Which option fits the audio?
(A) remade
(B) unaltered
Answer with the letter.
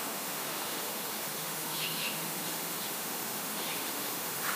A